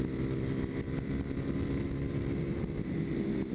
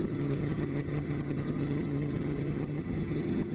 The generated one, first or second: second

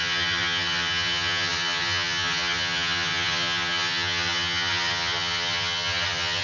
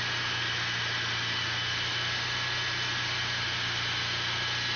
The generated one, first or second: first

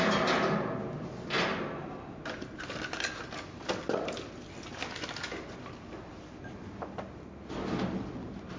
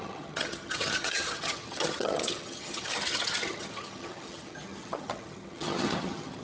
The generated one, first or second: second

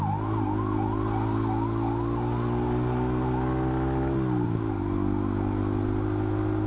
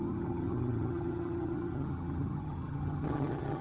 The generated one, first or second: second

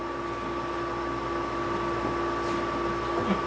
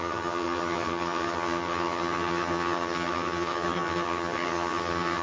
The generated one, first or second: second